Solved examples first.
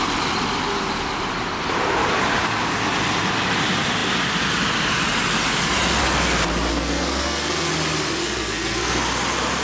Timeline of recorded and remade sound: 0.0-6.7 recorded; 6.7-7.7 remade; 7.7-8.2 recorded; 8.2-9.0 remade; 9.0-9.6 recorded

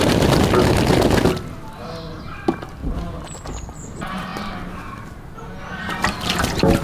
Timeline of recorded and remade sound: 0.0-6.8 recorded